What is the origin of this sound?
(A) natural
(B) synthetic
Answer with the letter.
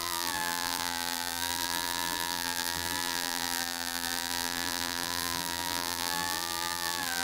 B